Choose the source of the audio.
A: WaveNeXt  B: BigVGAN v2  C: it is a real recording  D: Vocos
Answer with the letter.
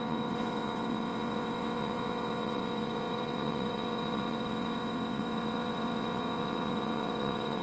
A